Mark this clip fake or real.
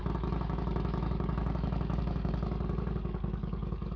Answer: fake